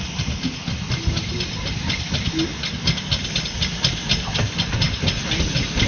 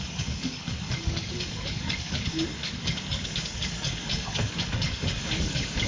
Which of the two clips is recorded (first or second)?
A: first